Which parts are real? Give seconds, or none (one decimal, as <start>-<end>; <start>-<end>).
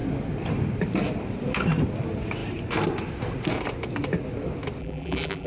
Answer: 0.0-4.8